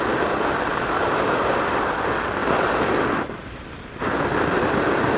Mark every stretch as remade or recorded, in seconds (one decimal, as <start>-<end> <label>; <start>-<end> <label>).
0.0-0.7 recorded; 0.7-1.4 remade; 1.4-2.4 recorded; 2.4-4.1 remade; 4.1-5.2 recorded